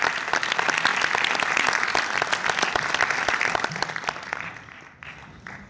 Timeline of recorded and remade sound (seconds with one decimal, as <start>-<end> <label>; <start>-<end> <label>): 0.0-5.7 recorded